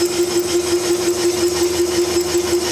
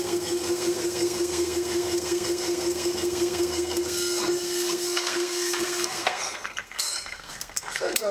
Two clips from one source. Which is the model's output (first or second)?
second